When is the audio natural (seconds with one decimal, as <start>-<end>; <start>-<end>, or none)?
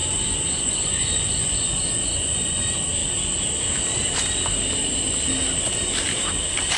2.6-6.8